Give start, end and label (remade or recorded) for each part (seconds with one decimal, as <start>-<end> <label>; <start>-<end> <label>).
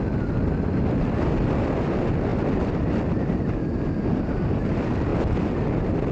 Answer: 0.0-6.1 recorded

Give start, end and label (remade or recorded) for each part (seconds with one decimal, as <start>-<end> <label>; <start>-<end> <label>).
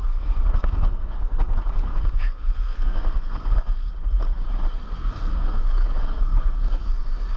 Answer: 0.0-3.9 remade; 3.9-5.0 recorded; 5.0-5.6 remade; 5.6-6.0 recorded; 6.0-7.0 remade; 7.0-7.4 recorded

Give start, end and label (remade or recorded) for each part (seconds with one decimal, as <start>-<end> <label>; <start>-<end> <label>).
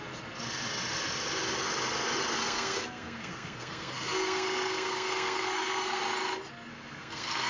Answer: 0.0-2.4 recorded; 2.4-6.0 remade; 6.0-6.7 recorded; 6.7-7.5 remade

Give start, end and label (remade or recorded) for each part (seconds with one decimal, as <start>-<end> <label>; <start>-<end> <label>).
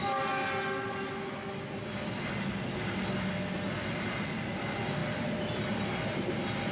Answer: 0.0-6.7 recorded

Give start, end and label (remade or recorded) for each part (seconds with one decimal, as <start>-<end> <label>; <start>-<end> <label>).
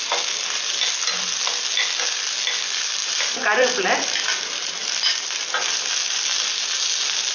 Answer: 0.0-3.0 recorded; 3.0-6.2 remade; 6.2-7.3 recorded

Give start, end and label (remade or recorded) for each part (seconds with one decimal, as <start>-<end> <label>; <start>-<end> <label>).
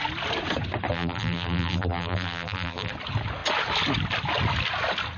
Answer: 0.0-0.9 recorded; 0.9-2.9 remade; 2.9-5.2 recorded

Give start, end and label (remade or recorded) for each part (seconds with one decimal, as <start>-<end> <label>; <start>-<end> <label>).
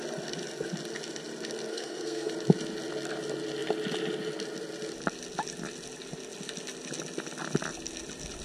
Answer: 0.0-1.7 recorded; 1.7-2.3 remade; 2.3-8.4 recorded